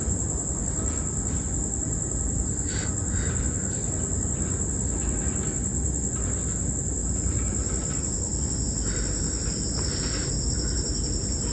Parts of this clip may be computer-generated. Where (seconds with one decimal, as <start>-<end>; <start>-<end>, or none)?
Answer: none